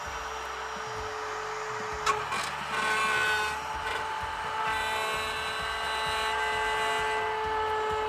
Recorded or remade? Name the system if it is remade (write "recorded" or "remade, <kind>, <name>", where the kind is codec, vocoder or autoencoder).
recorded